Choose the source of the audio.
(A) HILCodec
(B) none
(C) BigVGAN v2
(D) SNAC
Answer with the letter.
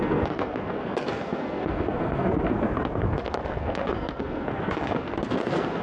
D